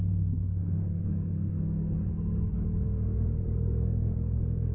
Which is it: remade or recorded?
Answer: remade